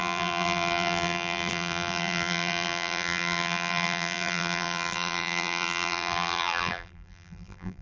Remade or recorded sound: remade